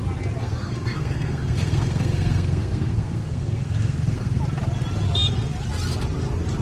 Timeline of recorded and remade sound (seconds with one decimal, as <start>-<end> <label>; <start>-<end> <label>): 0.0-0.4 recorded; 0.4-4.4 remade; 4.4-6.6 recorded